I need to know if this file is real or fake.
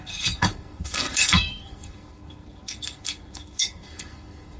fake